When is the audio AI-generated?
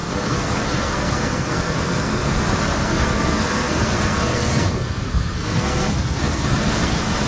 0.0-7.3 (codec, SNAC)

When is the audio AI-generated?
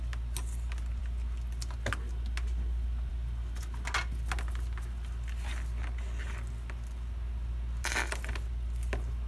none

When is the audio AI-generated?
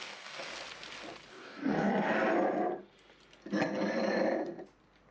0.0-0.5 (codec, DAC); 1.3-1.9